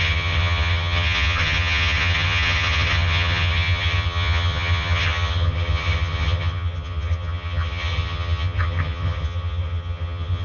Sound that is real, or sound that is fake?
fake